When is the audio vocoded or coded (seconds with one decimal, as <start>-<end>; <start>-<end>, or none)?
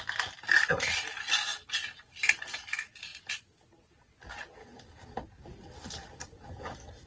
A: 1.5-2.3; 3.1-6.6